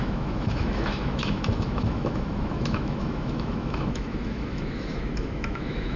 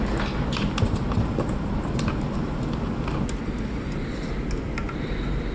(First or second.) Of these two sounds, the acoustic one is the second